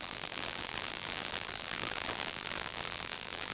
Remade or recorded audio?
remade